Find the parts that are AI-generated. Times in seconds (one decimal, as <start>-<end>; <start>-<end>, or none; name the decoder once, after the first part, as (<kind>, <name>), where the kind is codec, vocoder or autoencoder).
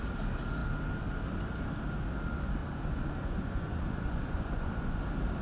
2.6-5.0 (vocoder, Vocos)